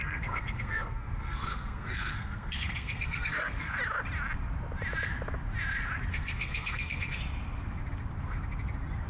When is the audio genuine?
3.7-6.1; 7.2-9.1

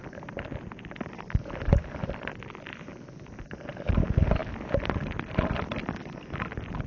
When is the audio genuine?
0.0-6.9

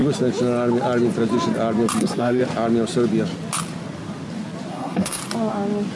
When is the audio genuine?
0.0-2.0; 2.4-4.7; 5.2-6.0